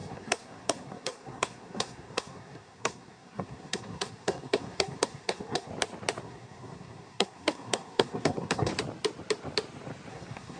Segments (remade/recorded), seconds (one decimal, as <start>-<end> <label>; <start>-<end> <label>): 0.0-5.7 remade; 5.7-6.2 recorded; 6.2-8.7 remade; 8.7-10.1 recorded; 10.1-10.6 remade